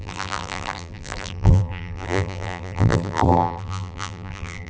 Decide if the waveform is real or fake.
fake